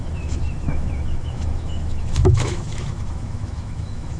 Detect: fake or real fake